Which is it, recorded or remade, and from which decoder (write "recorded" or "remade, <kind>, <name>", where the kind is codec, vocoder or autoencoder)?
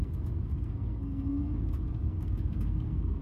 remade, codec, SNAC